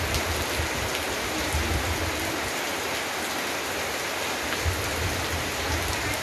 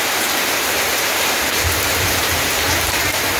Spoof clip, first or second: second